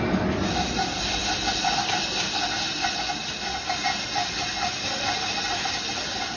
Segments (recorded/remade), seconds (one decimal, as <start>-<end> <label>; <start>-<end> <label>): 0.0-6.4 remade